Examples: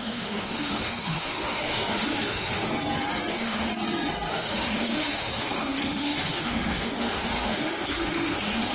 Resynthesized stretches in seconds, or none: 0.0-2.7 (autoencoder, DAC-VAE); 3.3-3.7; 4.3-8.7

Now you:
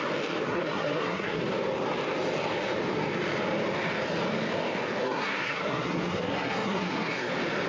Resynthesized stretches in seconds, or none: 0.5-1.4 (codec, SNAC); 5.0-7.3

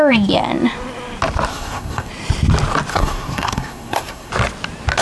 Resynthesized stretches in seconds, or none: 1.5-2.1 (codec, SNAC); 2.9-4.3

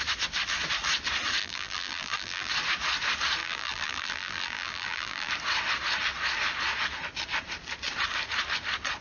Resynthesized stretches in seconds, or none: 1.4-2.5 (vocoder, BigVGAN v2); 3.4-5.3

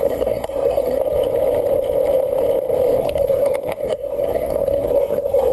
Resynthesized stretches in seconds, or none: 0.0-1.0 (codec, SNAC); 3.0-5.5

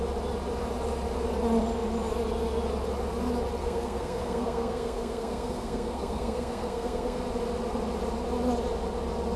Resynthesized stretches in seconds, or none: 3.6-7.2 (codec, SNAC)